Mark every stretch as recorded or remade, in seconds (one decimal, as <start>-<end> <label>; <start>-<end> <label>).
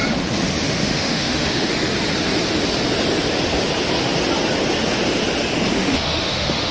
0.0-0.7 recorded; 0.7-1.7 remade; 1.7-5.7 recorded; 5.7-6.7 remade